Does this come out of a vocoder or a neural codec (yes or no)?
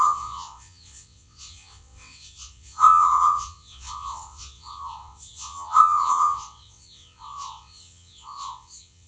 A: yes